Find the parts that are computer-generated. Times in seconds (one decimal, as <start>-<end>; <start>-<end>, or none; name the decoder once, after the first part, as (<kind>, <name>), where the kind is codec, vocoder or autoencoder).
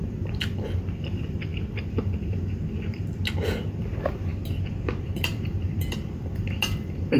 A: 0.0-3.2 (vocoder, BigVGAN v2); 3.8-4.3; 5.0-7.2